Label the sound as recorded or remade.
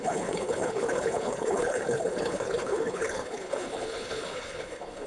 remade